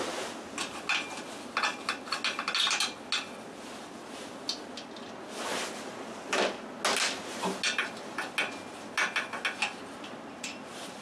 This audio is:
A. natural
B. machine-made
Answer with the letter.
A